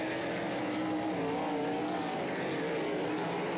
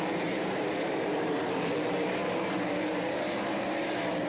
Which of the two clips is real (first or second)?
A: first